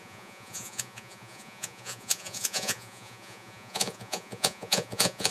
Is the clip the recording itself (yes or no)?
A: no